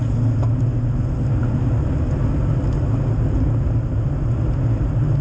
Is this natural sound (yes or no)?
yes